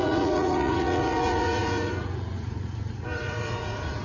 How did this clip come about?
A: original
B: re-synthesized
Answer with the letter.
B